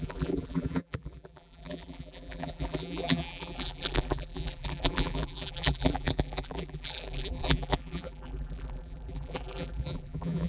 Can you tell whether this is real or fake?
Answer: fake